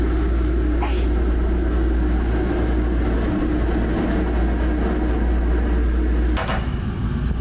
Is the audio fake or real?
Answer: real